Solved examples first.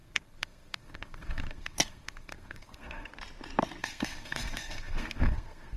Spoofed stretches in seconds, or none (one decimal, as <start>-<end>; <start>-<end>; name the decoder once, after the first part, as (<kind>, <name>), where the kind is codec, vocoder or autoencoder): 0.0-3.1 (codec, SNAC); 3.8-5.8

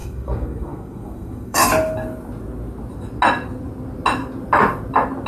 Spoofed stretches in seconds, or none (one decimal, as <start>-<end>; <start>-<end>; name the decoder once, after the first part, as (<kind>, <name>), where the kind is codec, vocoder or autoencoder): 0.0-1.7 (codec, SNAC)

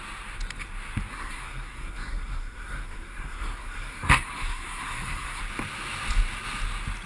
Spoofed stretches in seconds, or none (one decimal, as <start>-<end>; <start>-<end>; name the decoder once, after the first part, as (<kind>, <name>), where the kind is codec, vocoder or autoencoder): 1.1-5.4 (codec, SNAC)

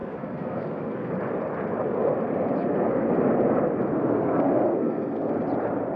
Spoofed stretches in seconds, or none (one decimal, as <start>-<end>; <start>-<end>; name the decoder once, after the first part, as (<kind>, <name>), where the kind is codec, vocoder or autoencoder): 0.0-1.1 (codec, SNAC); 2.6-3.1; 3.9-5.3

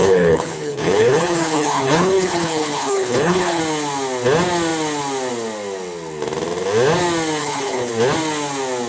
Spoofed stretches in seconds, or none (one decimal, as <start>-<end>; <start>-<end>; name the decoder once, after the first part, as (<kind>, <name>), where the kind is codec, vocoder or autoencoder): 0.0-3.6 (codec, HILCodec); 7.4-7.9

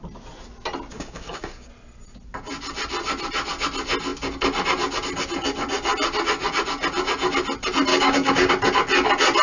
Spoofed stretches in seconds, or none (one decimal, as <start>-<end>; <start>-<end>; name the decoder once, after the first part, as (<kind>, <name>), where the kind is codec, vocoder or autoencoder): 0.9-1.7 (codec, DAC); 7.9-8.5

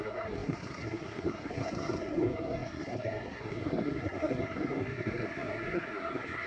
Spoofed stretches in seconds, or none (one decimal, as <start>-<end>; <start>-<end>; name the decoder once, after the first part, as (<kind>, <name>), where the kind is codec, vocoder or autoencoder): 0.0-6.5 (codec, SNAC)

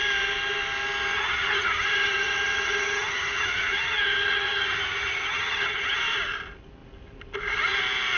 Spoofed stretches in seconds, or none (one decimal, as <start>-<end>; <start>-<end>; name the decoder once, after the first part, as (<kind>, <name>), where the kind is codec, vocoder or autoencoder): 1.1-6.0 (vocoder, HiFi-GAN)